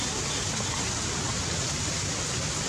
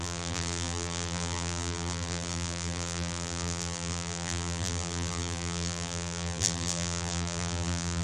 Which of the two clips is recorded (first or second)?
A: first